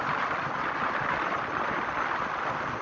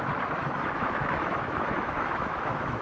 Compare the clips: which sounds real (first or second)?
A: first